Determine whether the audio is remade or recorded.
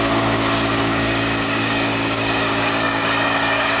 remade